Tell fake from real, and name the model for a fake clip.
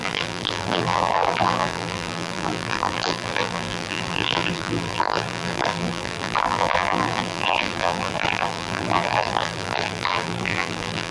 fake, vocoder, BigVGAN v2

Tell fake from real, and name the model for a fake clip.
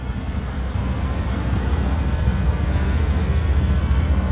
fake, codec, SNAC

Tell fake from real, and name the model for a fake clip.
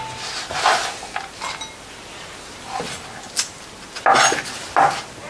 real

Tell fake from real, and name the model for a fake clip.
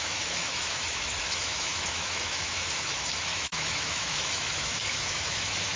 fake, autoencoder, DAC-VAE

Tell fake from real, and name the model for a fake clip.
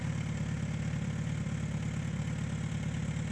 real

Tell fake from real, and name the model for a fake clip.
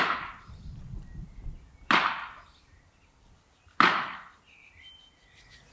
real